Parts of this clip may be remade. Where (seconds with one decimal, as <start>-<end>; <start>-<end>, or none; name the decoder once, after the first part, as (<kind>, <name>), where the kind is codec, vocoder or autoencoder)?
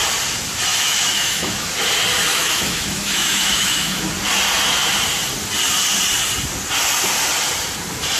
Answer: 0.7-1.7 (autoencoder, DAC-VAE); 2.3-4.1